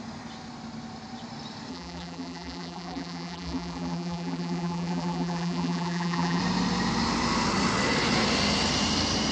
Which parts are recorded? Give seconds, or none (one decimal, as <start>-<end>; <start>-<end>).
0.0-1.7; 6.4-9.3